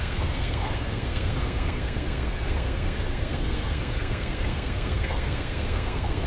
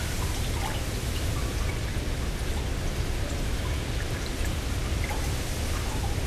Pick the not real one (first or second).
first